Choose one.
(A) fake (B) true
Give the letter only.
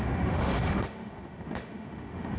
A